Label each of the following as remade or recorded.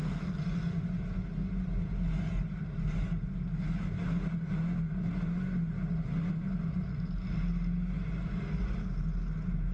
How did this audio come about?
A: recorded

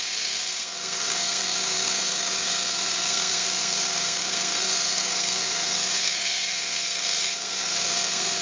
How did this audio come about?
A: remade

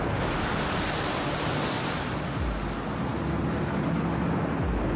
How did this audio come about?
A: recorded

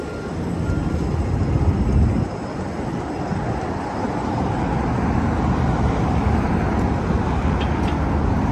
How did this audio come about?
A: recorded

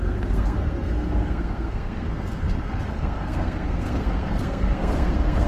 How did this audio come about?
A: remade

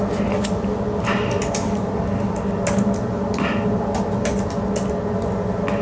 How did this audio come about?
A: recorded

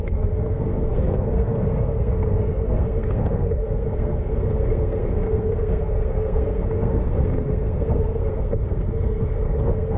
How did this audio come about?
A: remade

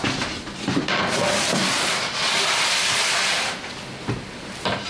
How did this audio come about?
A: recorded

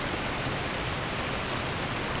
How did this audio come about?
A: recorded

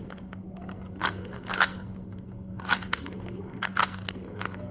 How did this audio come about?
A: remade